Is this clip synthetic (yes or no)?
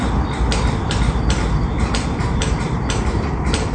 yes